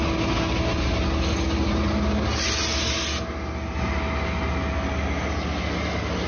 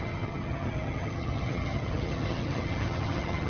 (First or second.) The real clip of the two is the first